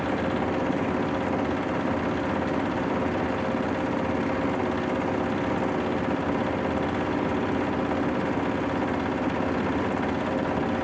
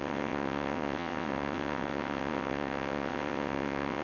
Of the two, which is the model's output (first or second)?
second